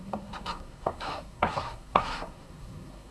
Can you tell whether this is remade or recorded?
remade